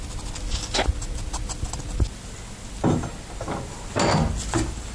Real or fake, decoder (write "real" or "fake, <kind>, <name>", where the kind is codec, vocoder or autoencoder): real